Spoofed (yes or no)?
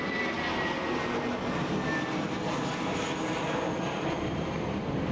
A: yes